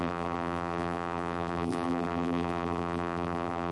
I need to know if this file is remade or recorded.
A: remade